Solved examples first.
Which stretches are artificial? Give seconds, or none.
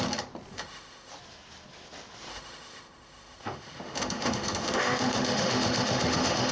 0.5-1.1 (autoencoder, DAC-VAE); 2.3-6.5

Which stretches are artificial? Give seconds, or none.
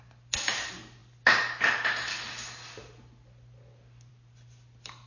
none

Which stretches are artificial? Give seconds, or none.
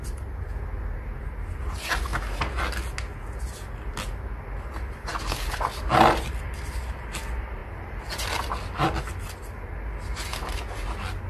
none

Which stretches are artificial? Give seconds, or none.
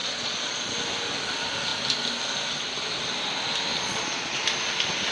0.0-0.7 (vocoder, Vocos); 3.7-4.4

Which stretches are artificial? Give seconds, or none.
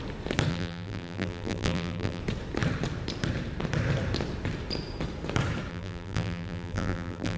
0.5-2.2 (vocoder, BigVGAN v2); 5.7-7.4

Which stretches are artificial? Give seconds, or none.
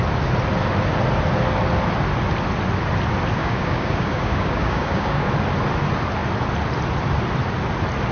3.4-5.3 (codec, DAC)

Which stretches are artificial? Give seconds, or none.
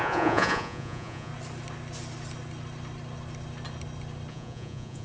0.0-1.3 (vocoder, Vocos); 4.3-5.0